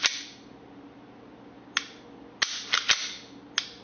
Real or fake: real